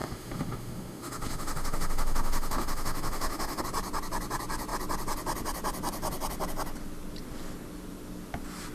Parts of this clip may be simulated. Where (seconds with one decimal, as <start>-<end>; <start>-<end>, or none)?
0.0-3.6

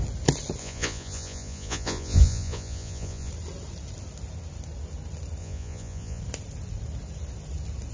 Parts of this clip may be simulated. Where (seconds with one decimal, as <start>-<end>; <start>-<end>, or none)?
0.6-3.3; 5.4-6.2

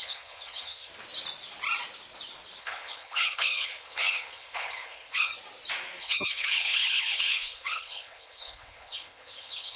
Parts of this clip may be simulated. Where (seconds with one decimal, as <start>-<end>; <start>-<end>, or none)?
0.0-0.9; 2.6-5.3; 6.0-9.8

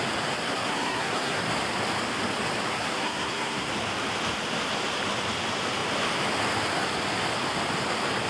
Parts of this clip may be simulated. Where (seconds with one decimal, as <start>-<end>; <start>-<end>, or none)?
0.4-1.4; 2.7-3.7